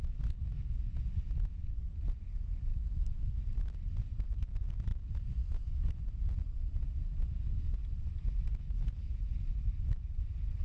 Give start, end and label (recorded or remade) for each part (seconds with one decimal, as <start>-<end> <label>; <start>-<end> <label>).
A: 0.0-2.7 recorded; 2.7-3.3 remade; 3.3-10.6 recorded